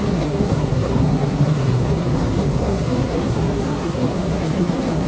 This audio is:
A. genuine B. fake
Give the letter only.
B